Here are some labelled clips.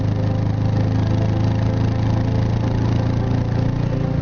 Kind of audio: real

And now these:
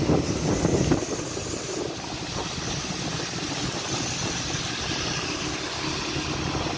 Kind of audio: real